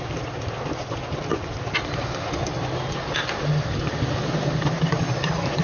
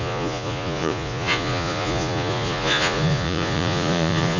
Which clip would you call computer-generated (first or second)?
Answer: second